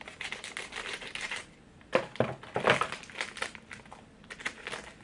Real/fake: real